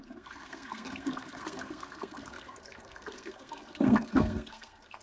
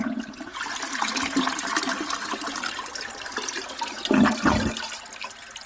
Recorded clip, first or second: second